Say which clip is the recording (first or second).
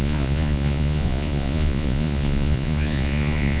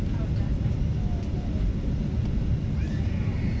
second